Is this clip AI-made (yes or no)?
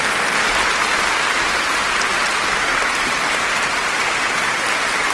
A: no